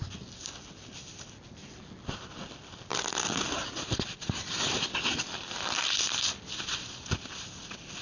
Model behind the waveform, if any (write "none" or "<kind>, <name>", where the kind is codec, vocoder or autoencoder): vocoder, BigVGAN v2